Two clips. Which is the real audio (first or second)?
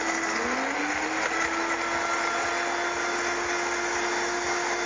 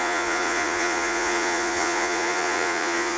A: first